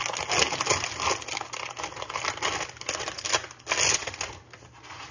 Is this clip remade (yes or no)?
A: no